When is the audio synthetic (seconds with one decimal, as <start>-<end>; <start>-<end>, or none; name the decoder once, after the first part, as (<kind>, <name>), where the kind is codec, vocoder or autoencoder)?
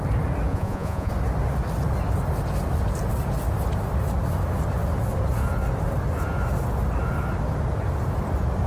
0.5-1.1 (vocoder, Vocos)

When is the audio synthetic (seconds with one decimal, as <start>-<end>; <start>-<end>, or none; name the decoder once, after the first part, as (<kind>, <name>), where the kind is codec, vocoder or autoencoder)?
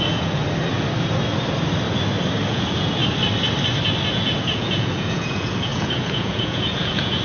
0.0-0.4 (vocoder, Vocos); 2.5-3.0; 4.0-7.2